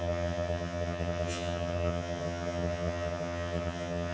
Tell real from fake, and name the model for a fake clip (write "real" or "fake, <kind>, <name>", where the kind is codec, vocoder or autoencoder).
fake, vocoder, HiFi-GAN